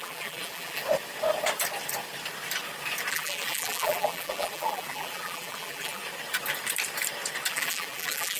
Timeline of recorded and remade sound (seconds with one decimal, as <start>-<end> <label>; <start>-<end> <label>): 0.0-0.8 remade; 0.8-3.1 recorded; 3.1-6.0 remade; 6.0-7.5 recorded; 7.5-8.4 remade